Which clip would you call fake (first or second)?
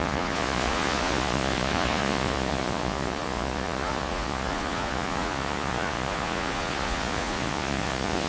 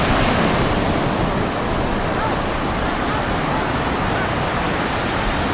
first